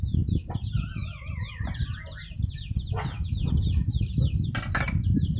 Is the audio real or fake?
real